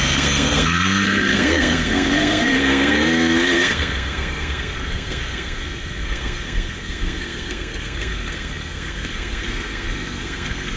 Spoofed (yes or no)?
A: yes